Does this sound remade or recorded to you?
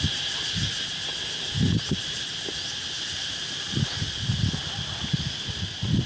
recorded